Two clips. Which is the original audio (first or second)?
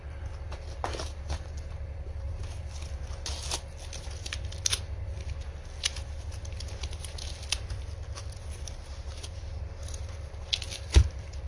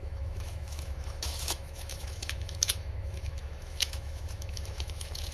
first